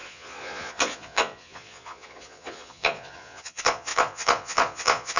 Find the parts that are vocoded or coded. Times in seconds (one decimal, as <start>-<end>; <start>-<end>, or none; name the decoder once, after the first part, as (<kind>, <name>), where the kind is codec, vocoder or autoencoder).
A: 0.0-5.2 (vocoder, Vocos)